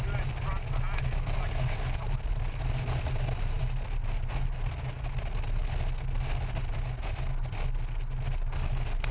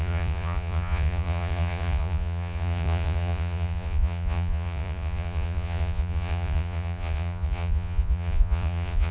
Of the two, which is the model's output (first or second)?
second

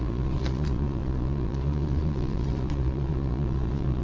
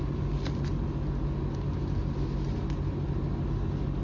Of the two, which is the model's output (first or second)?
first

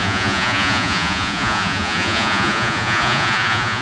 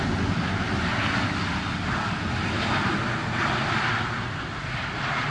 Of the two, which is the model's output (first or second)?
first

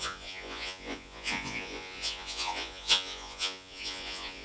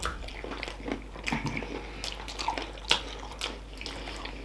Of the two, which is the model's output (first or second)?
first